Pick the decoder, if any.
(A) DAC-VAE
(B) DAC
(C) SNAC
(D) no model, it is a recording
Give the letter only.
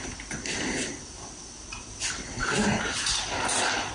D